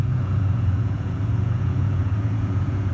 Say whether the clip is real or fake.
fake